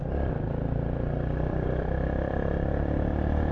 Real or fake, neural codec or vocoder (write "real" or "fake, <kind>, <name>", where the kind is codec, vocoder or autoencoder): fake, vocoder, BigVGAN v2